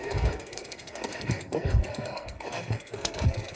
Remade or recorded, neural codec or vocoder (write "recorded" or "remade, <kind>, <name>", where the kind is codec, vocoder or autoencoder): remade, codec, SNAC